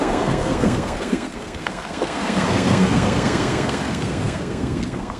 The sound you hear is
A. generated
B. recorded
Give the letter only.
A